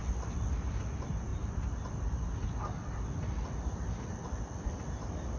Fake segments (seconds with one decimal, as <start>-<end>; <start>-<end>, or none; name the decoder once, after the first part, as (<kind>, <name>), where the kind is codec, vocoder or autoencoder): none